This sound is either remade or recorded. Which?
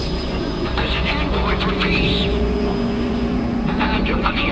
remade